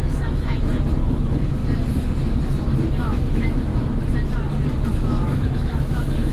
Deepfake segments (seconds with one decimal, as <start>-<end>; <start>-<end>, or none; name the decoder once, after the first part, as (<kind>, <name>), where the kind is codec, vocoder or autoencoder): 0.0-1.6 (autoencoder, DAC-VAE); 3.0-3.7; 4.9-6.3